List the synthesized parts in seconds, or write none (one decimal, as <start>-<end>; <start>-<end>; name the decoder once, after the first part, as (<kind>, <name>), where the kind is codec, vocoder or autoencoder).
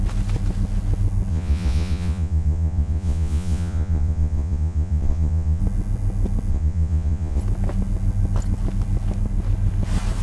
1.3-5.6 (vocoder, Vocos); 6.5-7.4